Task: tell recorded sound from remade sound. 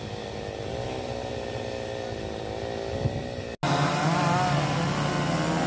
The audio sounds recorded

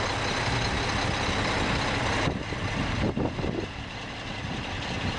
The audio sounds recorded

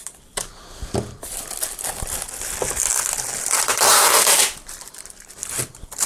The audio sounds remade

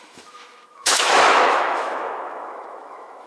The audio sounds remade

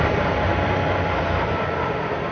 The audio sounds recorded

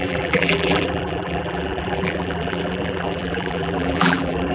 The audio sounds remade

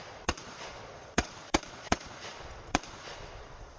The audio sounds remade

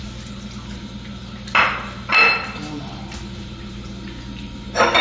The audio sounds recorded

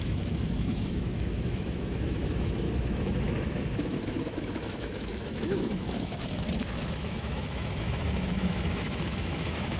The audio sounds remade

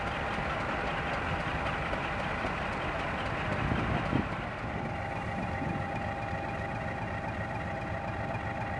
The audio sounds recorded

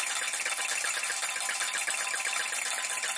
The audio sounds recorded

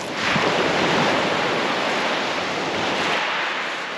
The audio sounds recorded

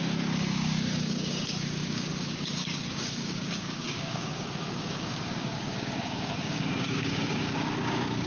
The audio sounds remade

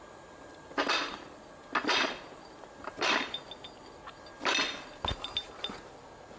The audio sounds recorded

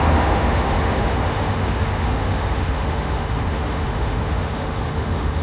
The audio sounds remade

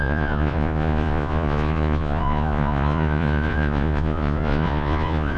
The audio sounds remade